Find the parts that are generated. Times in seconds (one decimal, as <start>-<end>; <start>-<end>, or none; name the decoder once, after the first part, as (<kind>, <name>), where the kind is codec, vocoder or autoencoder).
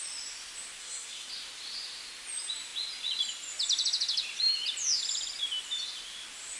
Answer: 0.8-1.3 (codec, SNAC)